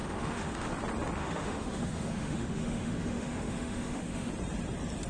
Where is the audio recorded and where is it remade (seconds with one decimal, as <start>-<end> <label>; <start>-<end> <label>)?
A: 0.0-0.7 remade; 0.7-1.2 recorded; 1.2-4.3 remade; 4.3-5.1 recorded